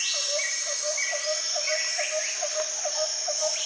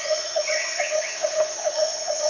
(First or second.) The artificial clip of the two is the second